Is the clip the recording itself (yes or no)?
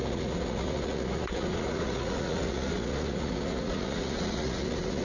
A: no